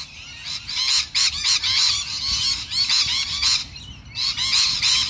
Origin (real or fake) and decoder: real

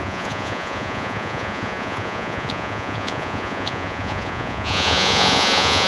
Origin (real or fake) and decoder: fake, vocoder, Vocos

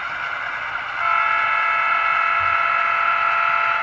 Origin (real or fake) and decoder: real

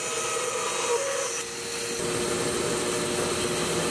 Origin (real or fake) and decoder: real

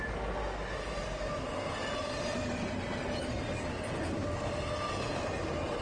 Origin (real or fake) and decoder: real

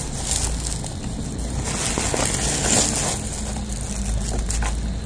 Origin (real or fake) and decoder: real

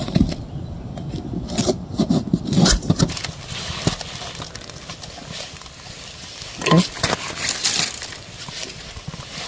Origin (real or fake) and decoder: real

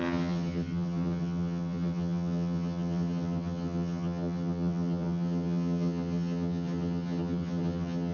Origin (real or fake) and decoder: fake, vocoder, HiFi-GAN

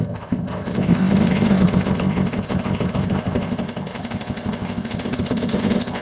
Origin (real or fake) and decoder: fake, codec, ZipCodec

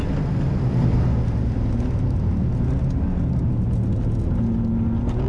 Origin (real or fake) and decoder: real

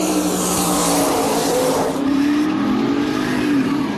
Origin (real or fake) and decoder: fake, vocoder, BigVGAN v2